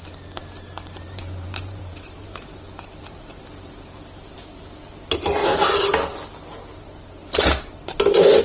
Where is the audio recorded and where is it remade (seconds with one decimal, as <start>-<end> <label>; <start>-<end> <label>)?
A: 0.0-0.4 recorded; 0.4-4.6 remade; 4.6-7.2 recorded; 7.2-8.0 remade; 8.0-8.4 recorded